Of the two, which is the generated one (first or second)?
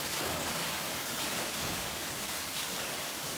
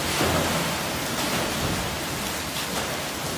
first